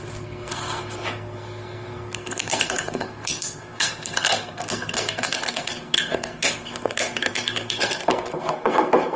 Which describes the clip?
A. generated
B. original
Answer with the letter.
A